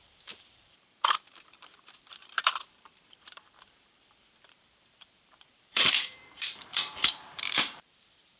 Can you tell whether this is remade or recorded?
remade